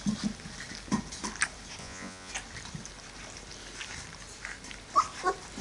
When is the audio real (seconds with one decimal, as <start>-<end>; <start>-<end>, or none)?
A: 0.0-1.8; 2.3-5.6